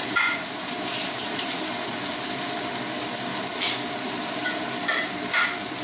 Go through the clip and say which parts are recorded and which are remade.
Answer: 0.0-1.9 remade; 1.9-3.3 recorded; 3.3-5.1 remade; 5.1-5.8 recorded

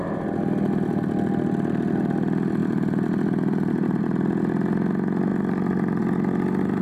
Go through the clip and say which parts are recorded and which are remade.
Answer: 0.0-2.6 recorded; 2.6-4.0 remade; 4.0-5.3 recorded; 5.3-6.0 remade; 6.0-6.8 recorded

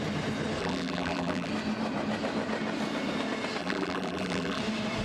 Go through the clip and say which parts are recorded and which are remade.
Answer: 0.0-0.6 recorded; 0.6-1.5 remade; 1.5-3.6 recorded; 3.6-4.6 remade; 4.6-5.0 recorded

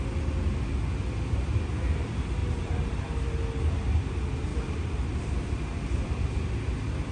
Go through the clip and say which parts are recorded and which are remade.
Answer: 0.0-2.4 recorded; 2.4-3.0 remade; 3.0-4.5 recorded; 4.5-6.3 remade; 6.3-7.1 recorded